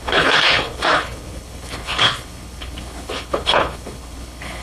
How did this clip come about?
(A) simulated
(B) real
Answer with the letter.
A